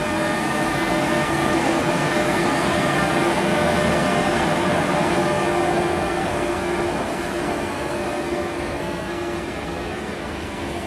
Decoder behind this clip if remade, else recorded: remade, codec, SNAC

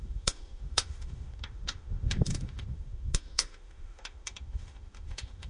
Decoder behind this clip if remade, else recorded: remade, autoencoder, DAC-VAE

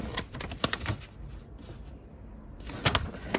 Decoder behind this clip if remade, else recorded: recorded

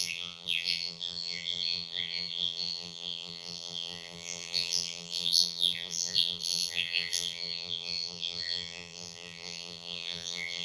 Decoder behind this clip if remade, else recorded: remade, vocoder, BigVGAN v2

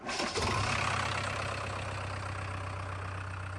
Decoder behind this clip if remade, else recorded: recorded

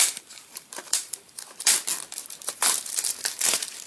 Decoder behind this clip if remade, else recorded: remade, vocoder, BigVGAN v2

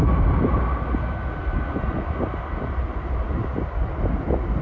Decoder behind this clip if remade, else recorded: recorded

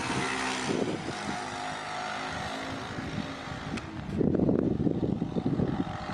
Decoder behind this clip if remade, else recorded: recorded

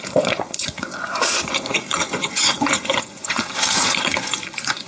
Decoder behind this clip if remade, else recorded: remade, vocoder, Vocos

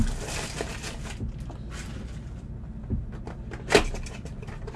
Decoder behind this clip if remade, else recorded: recorded